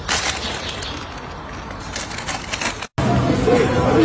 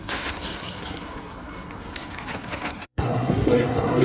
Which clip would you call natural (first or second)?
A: first